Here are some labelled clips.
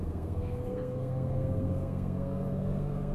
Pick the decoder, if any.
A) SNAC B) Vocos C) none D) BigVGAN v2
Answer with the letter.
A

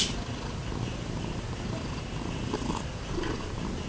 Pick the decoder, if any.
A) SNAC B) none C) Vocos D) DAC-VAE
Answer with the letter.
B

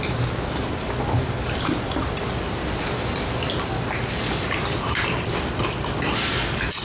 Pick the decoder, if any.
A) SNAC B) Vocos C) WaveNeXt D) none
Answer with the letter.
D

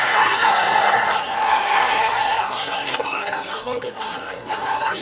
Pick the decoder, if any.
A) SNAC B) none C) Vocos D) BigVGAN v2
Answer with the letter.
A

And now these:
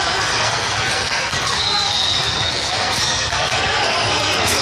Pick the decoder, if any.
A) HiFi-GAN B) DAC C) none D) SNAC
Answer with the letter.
D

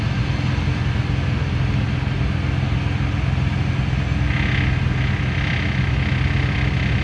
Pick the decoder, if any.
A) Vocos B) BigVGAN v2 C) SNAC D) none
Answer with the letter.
D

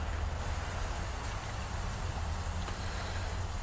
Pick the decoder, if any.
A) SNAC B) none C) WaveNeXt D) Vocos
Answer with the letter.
B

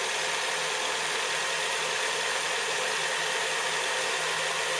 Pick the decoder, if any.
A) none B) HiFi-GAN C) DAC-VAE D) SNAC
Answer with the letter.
A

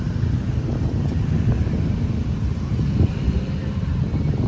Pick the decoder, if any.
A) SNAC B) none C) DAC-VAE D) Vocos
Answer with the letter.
B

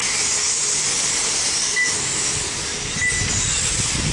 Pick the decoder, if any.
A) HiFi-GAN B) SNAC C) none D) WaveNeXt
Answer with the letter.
C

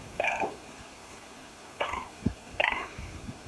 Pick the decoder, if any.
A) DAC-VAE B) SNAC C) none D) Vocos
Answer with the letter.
B